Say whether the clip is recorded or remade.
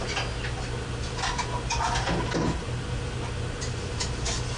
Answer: recorded